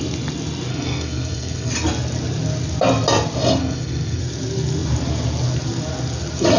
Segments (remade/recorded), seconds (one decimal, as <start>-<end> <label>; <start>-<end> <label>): 0.0-0.7 recorded; 0.7-1.7 remade; 1.7-3.6 recorded; 3.6-4.2 remade; 4.2-6.6 recorded